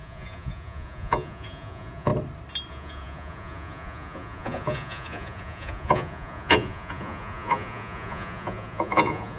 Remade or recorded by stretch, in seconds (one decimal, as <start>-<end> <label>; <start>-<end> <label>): 0.0-2.1 remade; 2.1-2.7 recorded; 2.7-9.4 remade